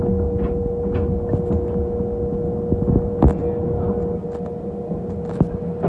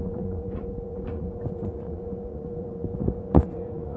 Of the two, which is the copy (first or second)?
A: second